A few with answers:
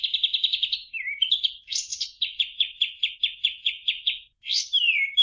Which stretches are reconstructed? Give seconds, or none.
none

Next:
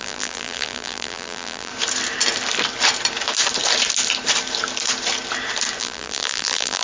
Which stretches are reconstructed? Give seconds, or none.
0.0-1.7 (vocoder, BigVGAN v2); 5.8-6.8

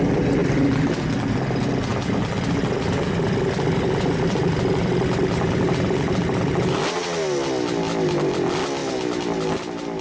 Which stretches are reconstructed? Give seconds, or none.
0.4-1.0 (vocoder, BigVGAN v2); 1.9-5.1